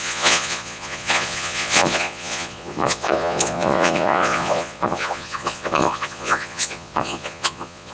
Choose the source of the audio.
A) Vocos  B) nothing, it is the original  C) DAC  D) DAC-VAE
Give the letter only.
A